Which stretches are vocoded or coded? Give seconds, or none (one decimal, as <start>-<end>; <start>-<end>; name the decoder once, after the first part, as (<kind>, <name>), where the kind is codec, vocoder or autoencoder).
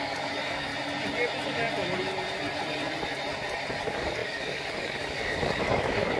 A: 0.0-0.7 (codec, DAC); 3.8-6.2